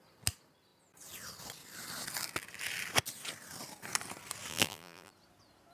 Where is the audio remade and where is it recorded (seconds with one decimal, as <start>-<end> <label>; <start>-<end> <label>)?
0.0-4.5 recorded; 4.5-5.1 remade; 5.1-5.7 recorded